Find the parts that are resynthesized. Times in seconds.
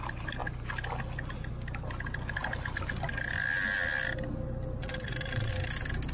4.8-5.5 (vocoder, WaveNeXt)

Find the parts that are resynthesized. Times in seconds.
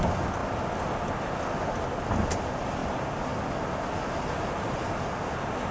none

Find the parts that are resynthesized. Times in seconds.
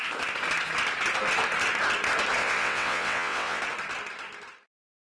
2.4-3.6 (vocoder, WaveNeXt)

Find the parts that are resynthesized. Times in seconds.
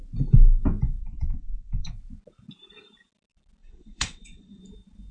1.0-1.9 (vocoder, WaveNeXt); 3.6-4.6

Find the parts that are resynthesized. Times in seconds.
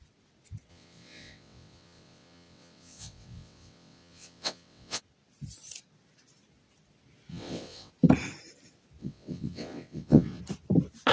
0.7-5.0 (vocoder, WaveNeXt); 7.3-7.9; 9.0-10.4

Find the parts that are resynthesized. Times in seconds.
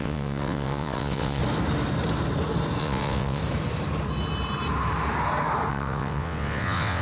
0.0-1.4 (vocoder, WaveNeXt); 2.8-3.4; 5.7-7.0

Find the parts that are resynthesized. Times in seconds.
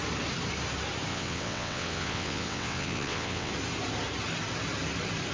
1.1-3.5 (vocoder, WaveNeXt)